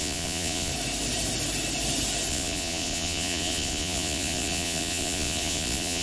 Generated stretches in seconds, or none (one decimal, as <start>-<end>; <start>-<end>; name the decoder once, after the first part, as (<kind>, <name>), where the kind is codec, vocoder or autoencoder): 0.0-0.7 (vocoder, Vocos); 2.3-6.0